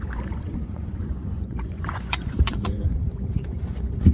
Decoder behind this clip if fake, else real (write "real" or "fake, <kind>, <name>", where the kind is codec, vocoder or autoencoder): fake, vocoder, Vocos